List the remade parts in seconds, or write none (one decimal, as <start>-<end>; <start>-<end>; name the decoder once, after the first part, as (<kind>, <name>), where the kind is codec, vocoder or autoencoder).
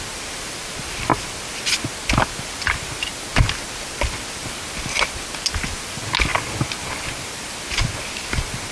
none